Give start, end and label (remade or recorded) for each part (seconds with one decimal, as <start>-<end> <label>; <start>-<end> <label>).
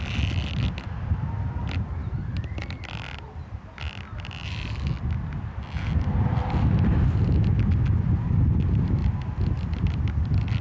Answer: 0.0-10.6 recorded